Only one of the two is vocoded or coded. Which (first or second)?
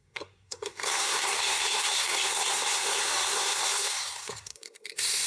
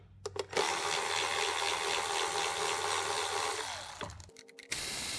first